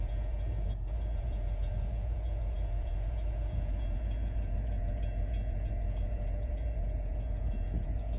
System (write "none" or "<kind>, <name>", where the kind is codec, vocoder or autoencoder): vocoder, Vocos